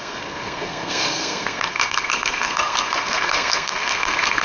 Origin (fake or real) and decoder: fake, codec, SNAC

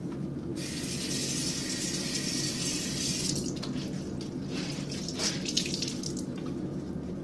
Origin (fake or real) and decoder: real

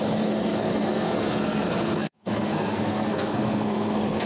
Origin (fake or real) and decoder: fake, codec, SNAC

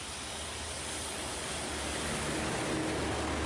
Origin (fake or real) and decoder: real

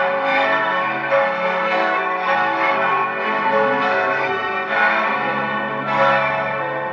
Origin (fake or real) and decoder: fake, codec, SNAC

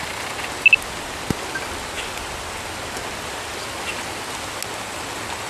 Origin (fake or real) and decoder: real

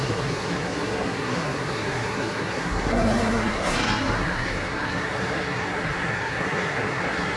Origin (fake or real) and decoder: fake, codec, SNAC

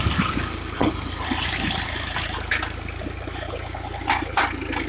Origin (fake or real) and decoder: real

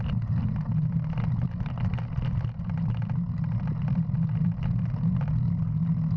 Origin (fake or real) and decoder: real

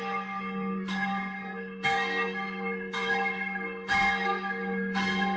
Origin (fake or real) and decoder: fake, codec, SNAC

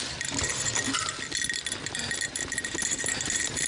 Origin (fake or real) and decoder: real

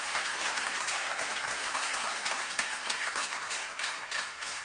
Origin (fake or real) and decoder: fake, codec, SNAC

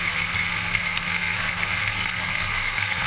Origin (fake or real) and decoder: fake, codec, SNAC